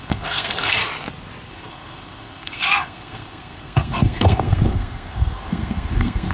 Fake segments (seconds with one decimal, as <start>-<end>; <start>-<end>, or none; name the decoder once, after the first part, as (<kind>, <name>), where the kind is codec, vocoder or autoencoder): 0.0-0.8 (codec, SNAC); 1.5-6.3